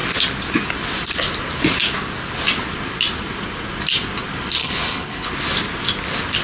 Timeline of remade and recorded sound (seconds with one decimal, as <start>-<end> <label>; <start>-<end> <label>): 0.0-4.6 recorded; 4.6-5.3 remade; 5.3-6.4 recorded